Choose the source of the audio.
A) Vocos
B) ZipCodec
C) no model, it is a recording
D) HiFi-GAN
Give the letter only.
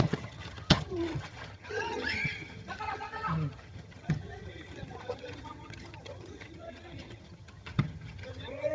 D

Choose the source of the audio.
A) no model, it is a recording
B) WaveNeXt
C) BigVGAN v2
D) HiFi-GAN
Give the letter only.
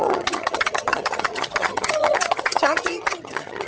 D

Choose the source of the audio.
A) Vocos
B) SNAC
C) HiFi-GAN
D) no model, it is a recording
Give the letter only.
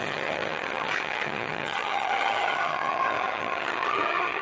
C